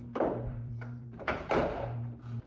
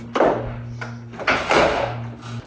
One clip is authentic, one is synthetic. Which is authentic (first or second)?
second